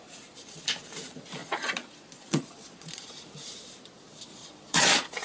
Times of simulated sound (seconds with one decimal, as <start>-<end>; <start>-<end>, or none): 1.4-3.2; 4.3-4.8